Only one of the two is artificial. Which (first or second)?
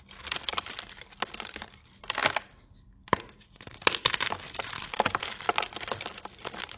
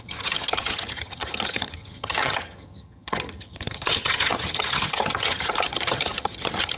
second